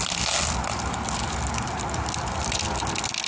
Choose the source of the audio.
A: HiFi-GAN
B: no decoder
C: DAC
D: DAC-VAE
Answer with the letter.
B